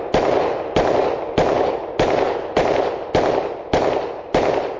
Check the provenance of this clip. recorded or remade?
recorded